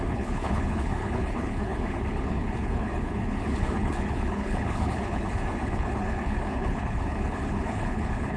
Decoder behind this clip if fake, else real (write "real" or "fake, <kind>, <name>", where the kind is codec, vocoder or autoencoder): fake, codec, HILCodec